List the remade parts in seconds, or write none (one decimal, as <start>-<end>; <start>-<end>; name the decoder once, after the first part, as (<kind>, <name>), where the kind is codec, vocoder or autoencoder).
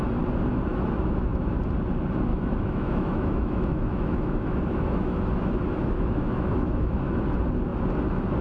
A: 0.7-1.6 (autoencoder, DAC-VAE); 2.3-7.2